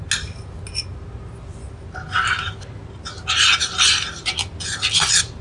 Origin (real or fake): real